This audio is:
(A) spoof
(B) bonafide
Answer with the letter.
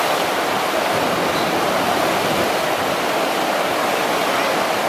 B